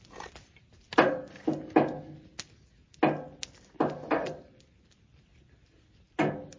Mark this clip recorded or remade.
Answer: recorded